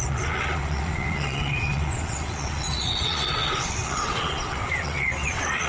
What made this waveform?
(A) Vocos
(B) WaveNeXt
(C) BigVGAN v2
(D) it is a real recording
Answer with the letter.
B